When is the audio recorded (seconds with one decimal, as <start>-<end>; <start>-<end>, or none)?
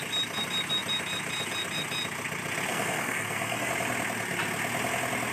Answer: 0.0-2.7; 3.7-5.3